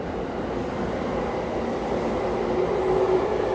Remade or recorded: recorded